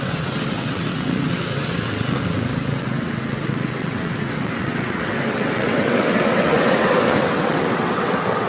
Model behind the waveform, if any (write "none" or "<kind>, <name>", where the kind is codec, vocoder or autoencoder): vocoder, WaveNeXt